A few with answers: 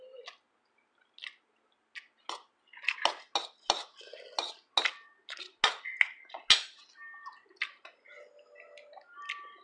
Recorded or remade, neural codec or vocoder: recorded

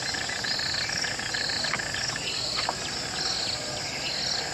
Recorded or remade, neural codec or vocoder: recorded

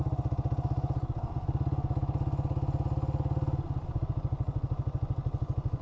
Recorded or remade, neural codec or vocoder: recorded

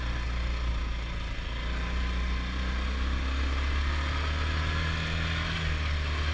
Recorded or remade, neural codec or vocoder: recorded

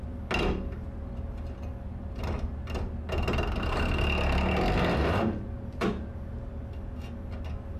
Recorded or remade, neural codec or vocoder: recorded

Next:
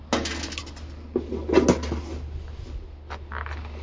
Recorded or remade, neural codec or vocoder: recorded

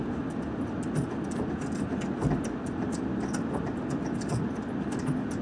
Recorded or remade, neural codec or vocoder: recorded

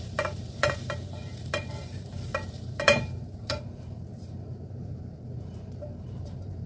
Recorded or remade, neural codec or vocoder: remade, vocoder, BigVGAN v2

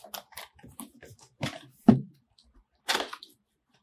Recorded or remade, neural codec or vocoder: recorded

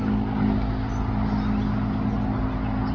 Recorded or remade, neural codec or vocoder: recorded